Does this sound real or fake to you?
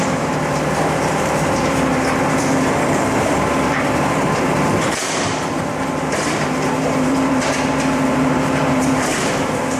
fake